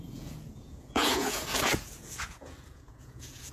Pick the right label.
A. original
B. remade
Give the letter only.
B